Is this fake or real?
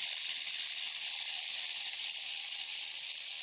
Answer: real